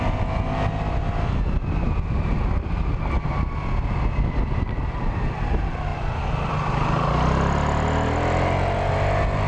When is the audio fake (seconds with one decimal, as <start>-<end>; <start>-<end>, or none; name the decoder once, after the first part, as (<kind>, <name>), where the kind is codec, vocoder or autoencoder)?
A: none